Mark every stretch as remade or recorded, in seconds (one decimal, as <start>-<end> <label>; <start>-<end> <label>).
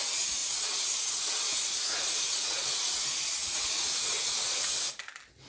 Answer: 0.0-0.4 recorded; 0.4-1.0 remade; 1.0-1.5 recorded; 1.5-3.0 remade; 3.0-3.4 recorded; 3.4-4.7 remade; 4.7-5.5 recorded